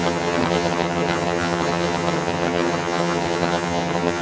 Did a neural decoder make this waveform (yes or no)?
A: yes